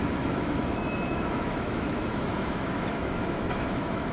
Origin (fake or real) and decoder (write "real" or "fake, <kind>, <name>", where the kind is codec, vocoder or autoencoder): fake, autoencoder, DAC-VAE